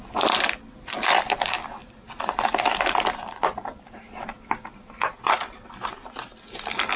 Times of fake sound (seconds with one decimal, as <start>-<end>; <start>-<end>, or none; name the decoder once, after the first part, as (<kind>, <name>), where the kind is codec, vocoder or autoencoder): none